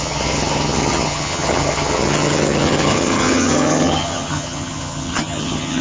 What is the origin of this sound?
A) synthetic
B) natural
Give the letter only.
A